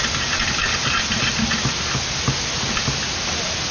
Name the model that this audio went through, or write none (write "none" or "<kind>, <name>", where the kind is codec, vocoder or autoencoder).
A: none